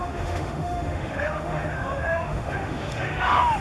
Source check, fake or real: fake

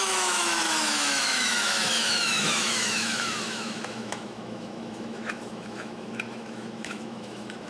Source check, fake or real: fake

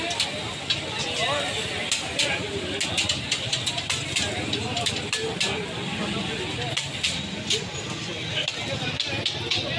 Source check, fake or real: real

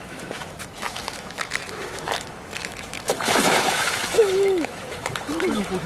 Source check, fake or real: fake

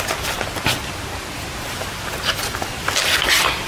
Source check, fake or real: real